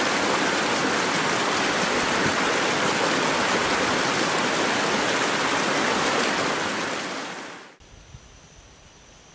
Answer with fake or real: real